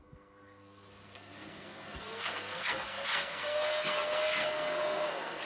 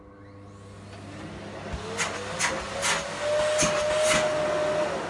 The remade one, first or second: first